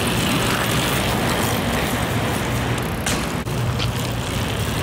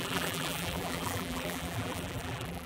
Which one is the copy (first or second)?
second